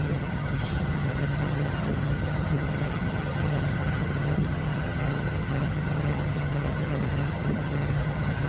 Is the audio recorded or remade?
remade